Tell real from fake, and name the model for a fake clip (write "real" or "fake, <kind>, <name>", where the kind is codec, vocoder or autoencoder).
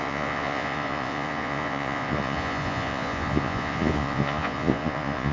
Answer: fake, vocoder, Vocos